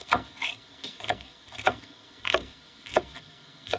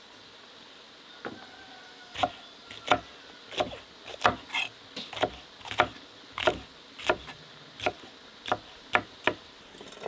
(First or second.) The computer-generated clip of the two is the first